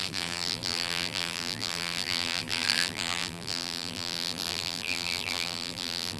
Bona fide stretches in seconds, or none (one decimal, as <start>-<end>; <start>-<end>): none